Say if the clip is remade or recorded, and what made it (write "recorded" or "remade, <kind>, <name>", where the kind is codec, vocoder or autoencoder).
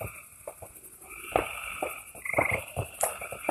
remade, vocoder, BigVGAN v2